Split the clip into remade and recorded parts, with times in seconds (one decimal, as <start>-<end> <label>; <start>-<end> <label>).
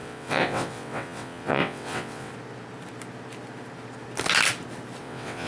0.0-2.3 remade; 2.3-5.0 recorded; 5.0-5.5 remade